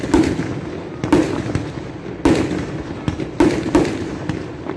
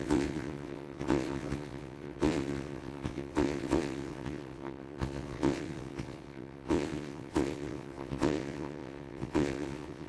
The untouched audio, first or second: first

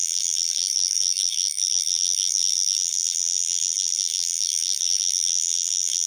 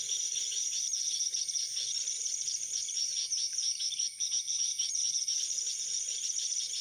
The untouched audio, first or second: second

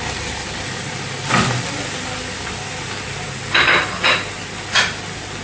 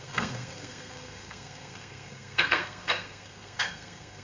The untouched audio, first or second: first